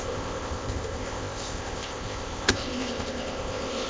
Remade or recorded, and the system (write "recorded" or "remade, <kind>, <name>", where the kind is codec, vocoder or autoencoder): remade, codec, ZipCodec